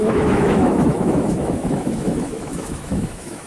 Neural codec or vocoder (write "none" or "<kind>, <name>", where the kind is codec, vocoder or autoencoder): autoencoder, DAC-VAE